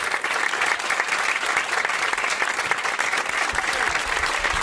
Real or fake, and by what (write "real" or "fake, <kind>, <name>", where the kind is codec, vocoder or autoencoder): real